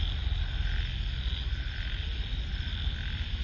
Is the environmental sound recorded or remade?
recorded